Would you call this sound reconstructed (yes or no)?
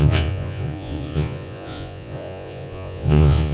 yes